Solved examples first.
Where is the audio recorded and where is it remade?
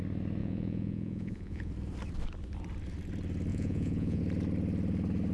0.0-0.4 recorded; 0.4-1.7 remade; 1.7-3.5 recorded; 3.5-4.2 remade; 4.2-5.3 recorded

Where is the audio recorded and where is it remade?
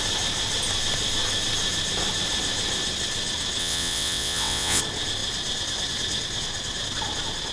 0.0-3.6 recorded; 3.6-4.8 remade; 4.8-7.5 recorded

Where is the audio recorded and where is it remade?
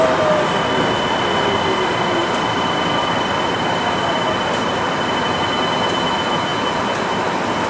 0.0-7.7 recorded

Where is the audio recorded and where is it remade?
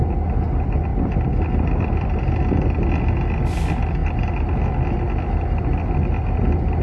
0.0-6.8 recorded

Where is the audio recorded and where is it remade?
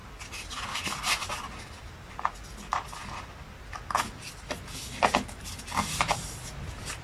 0.0-7.0 recorded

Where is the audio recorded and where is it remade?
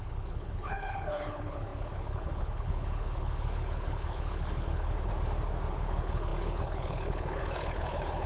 0.0-5.1 remade; 5.1-5.7 recorded; 5.7-8.3 remade